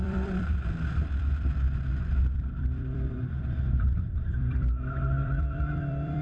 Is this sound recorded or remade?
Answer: remade